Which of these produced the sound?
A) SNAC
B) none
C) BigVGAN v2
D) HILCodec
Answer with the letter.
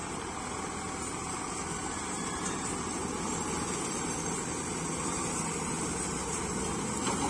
B